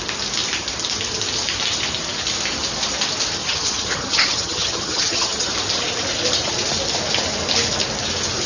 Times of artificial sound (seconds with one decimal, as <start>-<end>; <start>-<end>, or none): 3.4-5.5